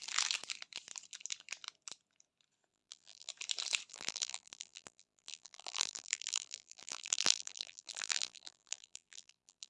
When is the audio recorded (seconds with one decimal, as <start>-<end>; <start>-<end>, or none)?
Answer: 0.0-2.7; 3.3-3.9

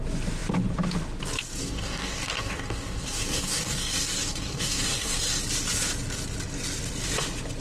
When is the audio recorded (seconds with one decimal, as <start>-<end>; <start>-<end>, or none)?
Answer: 0.0-1.6; 5.4-7.6

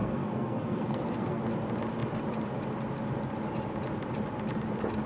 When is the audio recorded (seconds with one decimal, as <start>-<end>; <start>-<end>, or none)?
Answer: 1.4-5.1

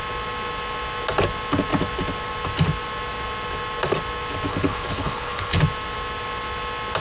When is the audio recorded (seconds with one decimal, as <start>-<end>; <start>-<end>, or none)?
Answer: 0.0-4.5; 5.6-7.0

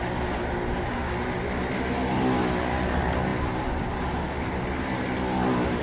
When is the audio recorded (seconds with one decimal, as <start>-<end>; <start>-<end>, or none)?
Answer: 0.0-5.8